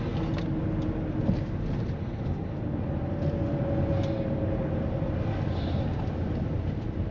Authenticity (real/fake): real